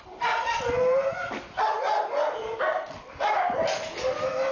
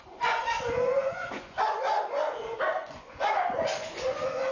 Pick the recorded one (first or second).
first